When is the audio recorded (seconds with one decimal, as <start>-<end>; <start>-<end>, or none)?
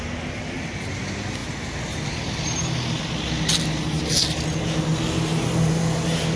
0.0-6.4